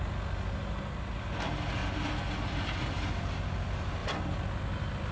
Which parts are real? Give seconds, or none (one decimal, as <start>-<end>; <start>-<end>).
0.0-5.1